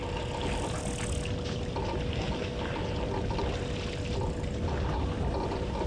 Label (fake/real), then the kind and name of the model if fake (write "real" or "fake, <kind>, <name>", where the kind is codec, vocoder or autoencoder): real